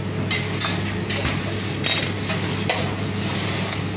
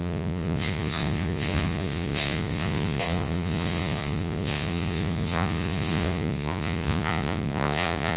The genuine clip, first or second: first